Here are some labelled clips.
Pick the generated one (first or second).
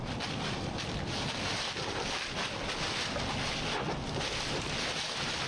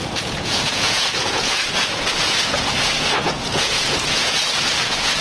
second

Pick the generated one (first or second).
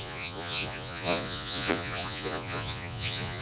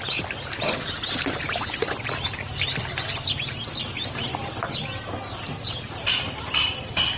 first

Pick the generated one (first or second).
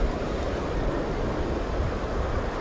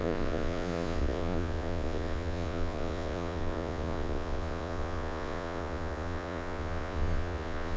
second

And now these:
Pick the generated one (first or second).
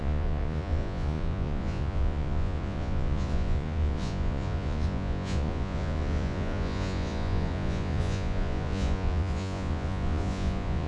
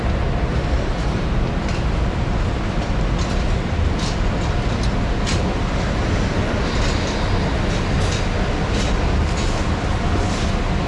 first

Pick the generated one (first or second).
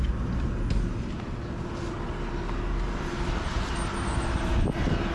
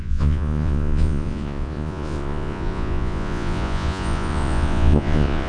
second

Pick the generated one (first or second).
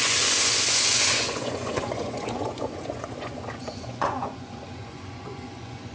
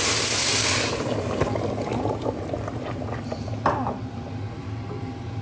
first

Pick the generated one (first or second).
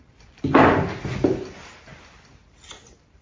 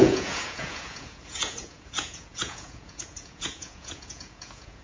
second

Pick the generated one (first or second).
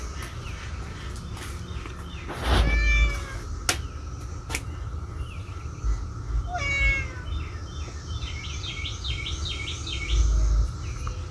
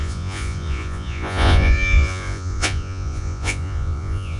second